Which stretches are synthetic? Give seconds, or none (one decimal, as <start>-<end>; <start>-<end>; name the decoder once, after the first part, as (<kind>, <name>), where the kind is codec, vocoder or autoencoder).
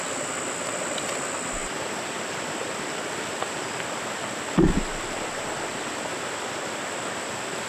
1.6-2.6 (vocoder, BigVGAN v2)